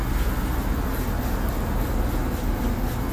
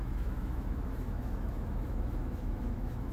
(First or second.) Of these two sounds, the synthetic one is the second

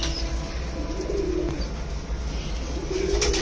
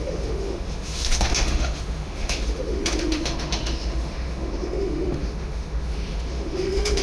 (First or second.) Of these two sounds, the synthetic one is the second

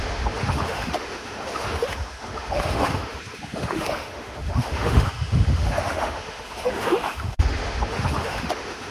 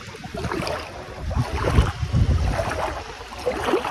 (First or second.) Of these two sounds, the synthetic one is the first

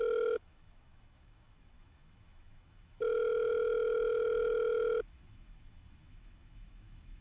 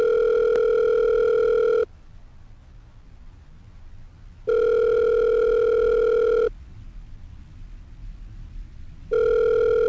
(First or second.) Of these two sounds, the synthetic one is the first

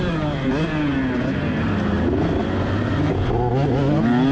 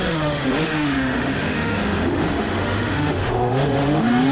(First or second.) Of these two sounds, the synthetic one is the second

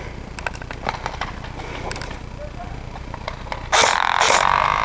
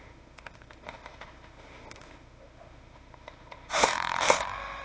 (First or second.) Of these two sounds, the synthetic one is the second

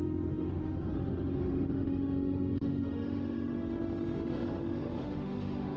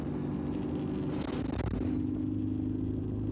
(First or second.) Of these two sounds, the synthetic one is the first